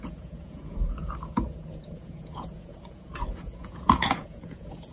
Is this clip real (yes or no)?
no